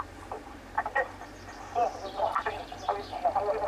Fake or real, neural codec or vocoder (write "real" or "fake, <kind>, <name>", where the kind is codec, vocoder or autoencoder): real